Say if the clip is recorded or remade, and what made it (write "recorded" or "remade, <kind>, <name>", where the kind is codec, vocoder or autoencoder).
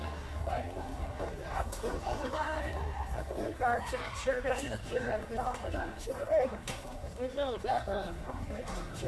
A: remade, codec, SNAC